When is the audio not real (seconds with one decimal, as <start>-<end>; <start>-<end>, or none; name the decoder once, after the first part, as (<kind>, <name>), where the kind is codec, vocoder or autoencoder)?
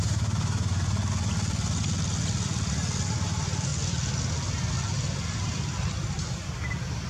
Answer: none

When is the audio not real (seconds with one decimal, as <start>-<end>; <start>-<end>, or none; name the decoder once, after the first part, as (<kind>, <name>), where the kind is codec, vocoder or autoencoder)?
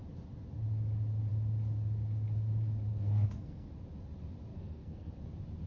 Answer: 2.9-3.7 (codec, SNAC); 4.5-5.1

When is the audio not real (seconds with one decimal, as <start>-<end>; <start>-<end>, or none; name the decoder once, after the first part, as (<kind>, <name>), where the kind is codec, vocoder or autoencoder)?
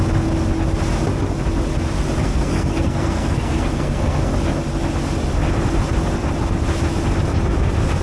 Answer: 2.2-4.3 (codec, SNAC)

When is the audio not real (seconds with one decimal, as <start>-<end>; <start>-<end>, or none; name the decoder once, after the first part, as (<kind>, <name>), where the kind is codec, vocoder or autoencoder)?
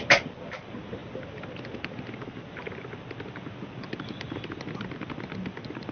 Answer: none